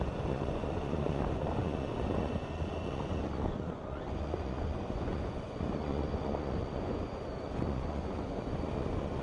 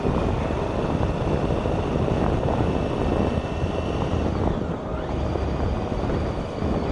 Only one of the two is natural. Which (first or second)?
second